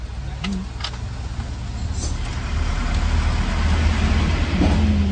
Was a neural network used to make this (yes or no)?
no